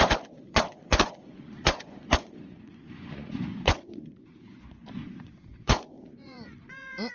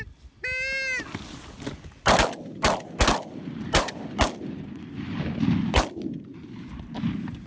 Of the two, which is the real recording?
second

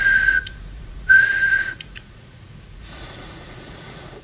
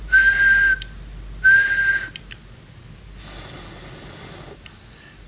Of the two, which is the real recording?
second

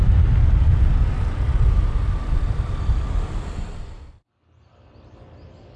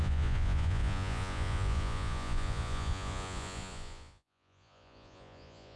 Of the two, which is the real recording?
first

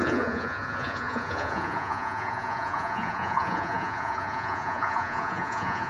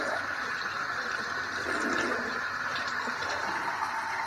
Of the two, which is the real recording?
second